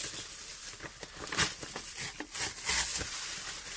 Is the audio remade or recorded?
recorded